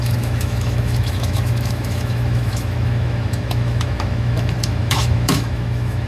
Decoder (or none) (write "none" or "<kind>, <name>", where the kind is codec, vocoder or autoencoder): autoencoder, DAC-VAE